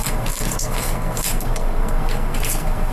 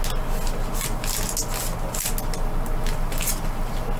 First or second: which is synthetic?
first